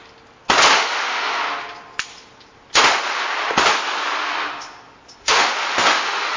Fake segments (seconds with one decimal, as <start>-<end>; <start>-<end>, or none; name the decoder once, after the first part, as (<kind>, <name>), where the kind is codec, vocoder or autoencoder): 0.7-1.4 (autoencoder, DAC-VAE); 5.2-6.4